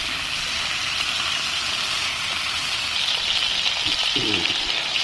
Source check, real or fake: real